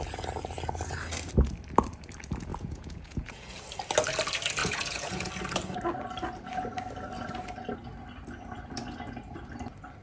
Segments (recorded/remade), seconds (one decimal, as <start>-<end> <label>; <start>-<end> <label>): 0.0-2.5 recorded; 2.5-3.6 remade; 3.6-4.6 recorded; 4.6-5.3 remade; 5.3-10.0 recorded